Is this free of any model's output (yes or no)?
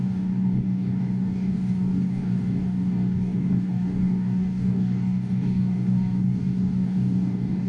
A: no